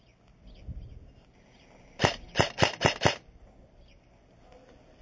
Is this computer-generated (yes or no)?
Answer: no